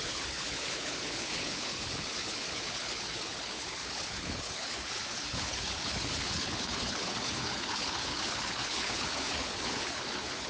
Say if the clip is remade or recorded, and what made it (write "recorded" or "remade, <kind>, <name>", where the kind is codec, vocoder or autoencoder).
remade, codec, HILCodec